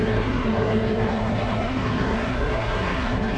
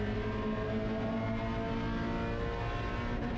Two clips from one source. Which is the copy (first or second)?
first